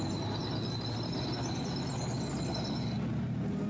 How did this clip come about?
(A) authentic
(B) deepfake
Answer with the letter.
A